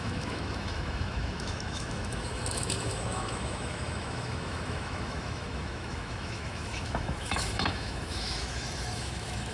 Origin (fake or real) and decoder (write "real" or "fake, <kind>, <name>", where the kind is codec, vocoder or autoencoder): fake, autoencoder, DAC-VAE